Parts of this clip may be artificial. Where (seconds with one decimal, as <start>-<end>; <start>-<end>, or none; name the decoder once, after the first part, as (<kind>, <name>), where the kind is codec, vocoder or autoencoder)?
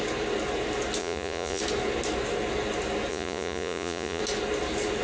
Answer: 1.0-1.6 (vocoder, Vocos); 3.1-4.2